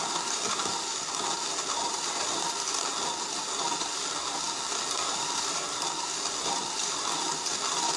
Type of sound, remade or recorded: recorded